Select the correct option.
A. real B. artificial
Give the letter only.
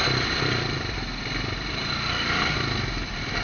B